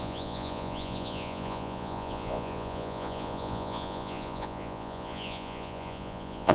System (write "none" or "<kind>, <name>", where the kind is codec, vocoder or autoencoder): vocoder, Vocos